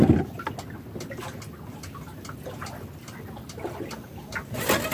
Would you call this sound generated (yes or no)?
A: no